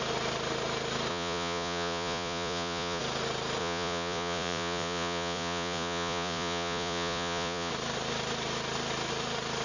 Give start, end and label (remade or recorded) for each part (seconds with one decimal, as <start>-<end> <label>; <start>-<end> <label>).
0.0-1.1 recorded; 1.1-3.0 remade; 3.0-3.6 recorded; 3.6-7.7 remade; 7.7-9.6 recorded